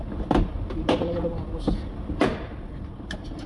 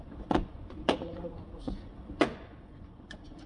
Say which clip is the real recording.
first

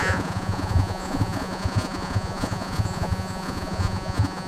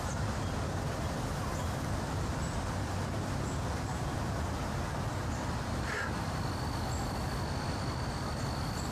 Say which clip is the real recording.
second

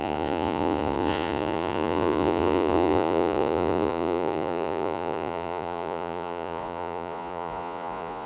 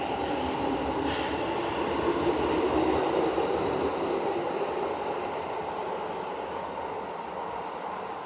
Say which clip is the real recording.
second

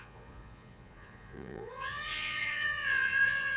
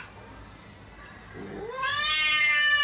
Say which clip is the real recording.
second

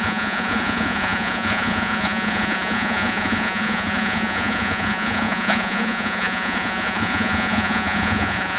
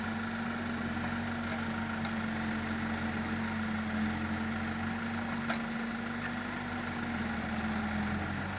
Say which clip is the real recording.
second